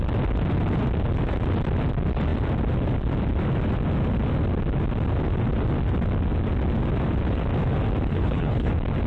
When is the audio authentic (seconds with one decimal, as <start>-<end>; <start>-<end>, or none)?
0.0-8.1; 8.7-9.1